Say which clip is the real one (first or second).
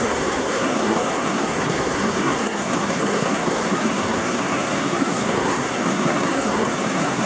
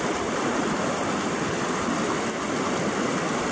second